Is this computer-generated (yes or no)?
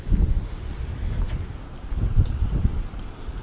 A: no